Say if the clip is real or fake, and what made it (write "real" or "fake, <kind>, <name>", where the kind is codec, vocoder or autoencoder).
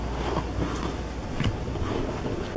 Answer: real